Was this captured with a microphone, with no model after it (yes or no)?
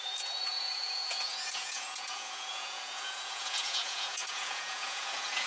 no